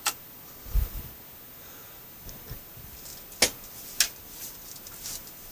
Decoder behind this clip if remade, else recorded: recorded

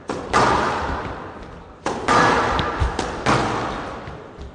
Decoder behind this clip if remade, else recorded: recorded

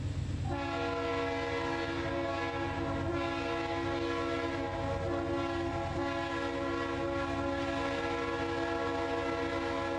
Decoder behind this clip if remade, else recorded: recorded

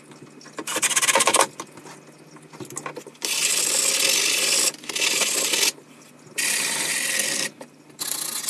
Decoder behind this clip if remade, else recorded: recorded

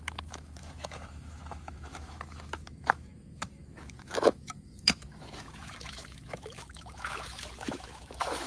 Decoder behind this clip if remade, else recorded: remade, autoencoder, DAC-VAE